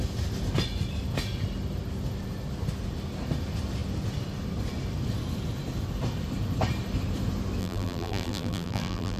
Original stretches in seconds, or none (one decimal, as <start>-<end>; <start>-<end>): 0.0-7.6